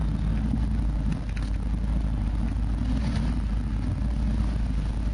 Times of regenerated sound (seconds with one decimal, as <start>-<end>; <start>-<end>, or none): none